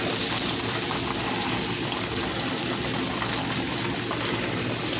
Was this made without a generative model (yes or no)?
yes